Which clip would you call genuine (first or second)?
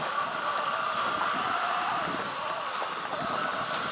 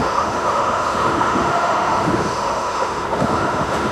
first